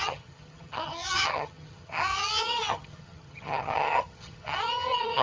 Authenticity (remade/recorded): remade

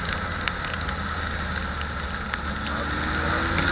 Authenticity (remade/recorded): recorded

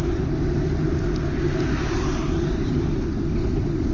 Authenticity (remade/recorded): recorded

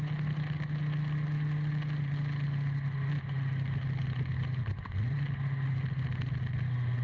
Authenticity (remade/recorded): recorded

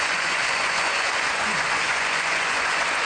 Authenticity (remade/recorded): remade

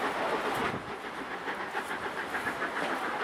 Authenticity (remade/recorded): recorded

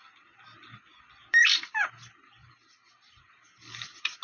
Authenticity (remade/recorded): remade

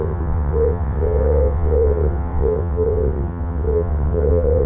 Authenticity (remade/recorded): remade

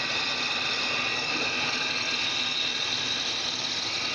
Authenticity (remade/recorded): recorded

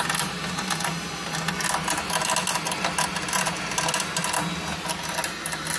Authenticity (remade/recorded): recorded